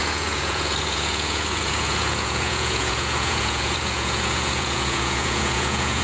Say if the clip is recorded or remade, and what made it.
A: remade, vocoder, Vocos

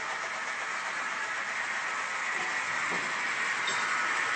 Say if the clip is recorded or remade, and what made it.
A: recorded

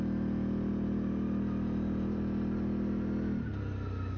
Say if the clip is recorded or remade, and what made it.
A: recorded